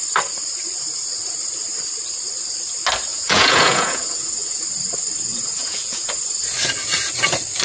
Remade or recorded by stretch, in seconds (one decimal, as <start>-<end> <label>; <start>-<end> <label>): 0.0-3.1 recorded; 3.1-4.6 remade; 4.6-5.3 recorded; 5.3-6.2 remade; 6.2-7.6 recorded